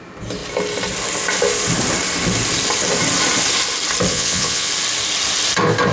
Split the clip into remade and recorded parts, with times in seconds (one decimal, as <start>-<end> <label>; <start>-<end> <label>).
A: 0.0-4.1 recorded; 4.1-4.7 remade; 4.7-5.9 recorded

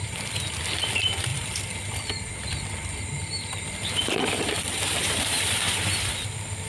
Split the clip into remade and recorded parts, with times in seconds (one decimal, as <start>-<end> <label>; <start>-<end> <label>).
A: 0.0-1.3 recorded; 1.3-5.2 remade; 5.2-6.7 recorded

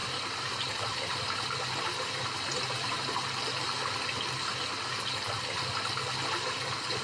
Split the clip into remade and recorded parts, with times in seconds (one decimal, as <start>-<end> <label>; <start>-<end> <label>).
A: 0.0-3.2 remade; 3.2-7.0 recorded